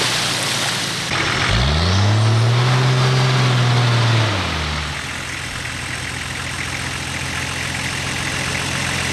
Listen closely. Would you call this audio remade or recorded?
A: recorded